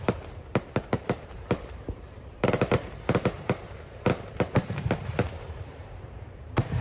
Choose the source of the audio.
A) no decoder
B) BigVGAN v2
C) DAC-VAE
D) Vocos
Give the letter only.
B